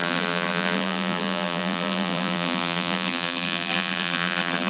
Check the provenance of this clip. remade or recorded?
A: remade